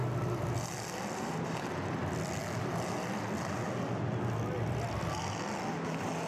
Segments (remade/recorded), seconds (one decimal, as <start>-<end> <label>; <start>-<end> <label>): 0.0-1.6 remade; 1.6-6.3 recorded